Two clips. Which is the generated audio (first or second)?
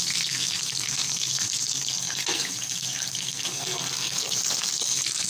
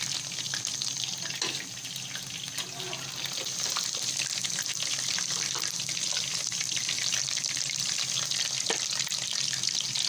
first